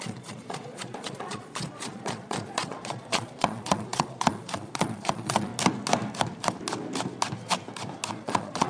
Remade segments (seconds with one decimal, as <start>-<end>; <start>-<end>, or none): 0.0-5.5; 8.1-8.7